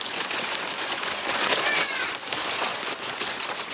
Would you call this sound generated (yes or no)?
yes